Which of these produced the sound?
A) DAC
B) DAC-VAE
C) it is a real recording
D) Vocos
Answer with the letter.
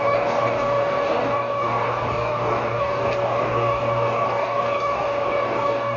A